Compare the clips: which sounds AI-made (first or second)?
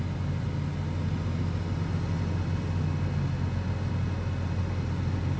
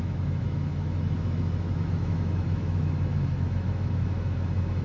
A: second